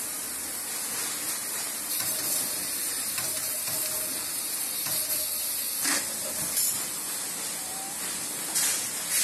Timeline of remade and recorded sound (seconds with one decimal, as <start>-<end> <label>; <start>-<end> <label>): 0.0-1.4 recorded; 1.4-2.2 remade; 2.2-2.8 recorded; 2.8-3.8 remade; 3.8-9.2 recorded